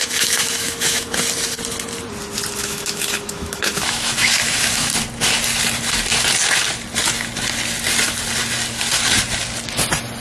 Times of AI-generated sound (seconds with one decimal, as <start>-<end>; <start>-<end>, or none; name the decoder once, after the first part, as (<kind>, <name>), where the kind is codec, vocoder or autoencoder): 0.0-1.1 (autoencoder, DAC-VAE); 2.6-4.9